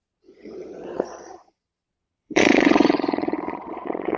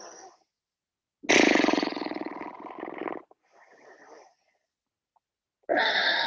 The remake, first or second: first